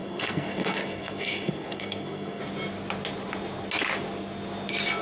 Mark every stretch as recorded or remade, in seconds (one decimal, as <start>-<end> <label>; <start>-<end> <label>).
0.0-2.4 remade; 2.4-5.0 recorded